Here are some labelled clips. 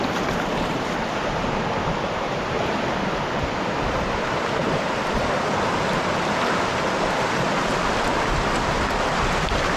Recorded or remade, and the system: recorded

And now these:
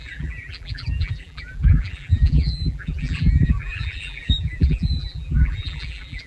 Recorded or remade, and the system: remade, vocoder, BigVGAN v2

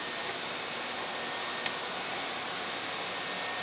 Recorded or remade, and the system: recorded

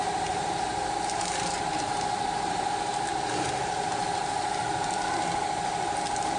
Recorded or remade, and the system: recorded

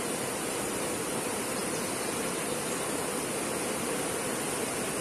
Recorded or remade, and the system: recorded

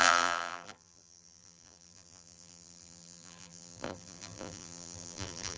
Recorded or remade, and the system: remade, vocoder, BigVGAN v2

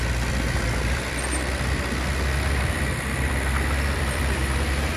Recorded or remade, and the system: remade, vocoder, BigVGAN v2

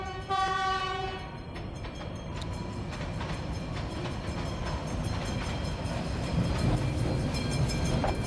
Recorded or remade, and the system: remade, vocoder, BigVGAN v2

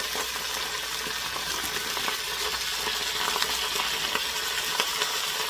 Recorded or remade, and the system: recorded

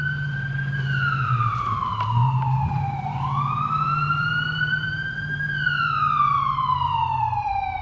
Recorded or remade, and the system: remade, vocoder, BigVGAN v2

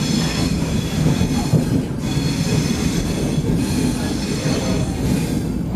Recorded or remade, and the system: recorded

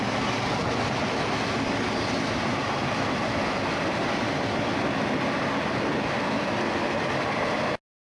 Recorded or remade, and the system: recorded